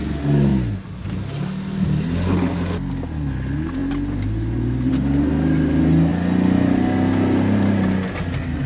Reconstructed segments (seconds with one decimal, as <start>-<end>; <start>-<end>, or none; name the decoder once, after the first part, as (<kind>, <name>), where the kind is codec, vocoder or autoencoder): none